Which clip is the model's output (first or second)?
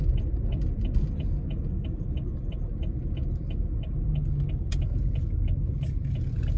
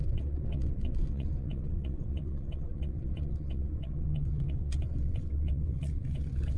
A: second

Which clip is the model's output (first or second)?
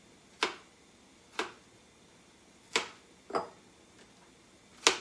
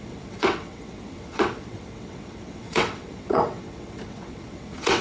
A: second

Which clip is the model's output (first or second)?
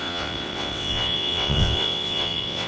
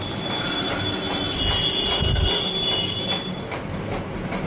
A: first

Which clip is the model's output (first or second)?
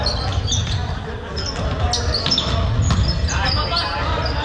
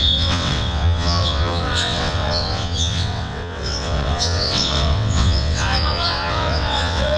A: second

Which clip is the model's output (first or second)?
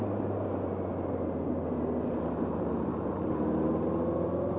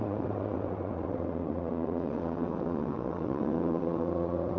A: second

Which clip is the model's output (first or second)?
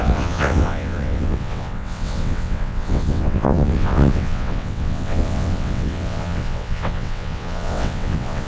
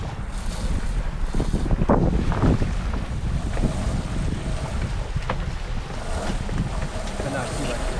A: first